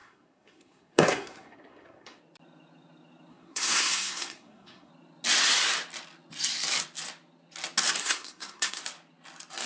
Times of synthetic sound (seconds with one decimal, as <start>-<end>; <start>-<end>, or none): 0.0-2.2; 3.3-4.9; 8.0-8.8